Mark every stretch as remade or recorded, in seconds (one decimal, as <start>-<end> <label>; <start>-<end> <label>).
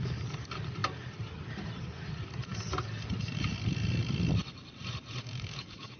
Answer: 0.0-5.2 recorded; 5.2-6.0 remade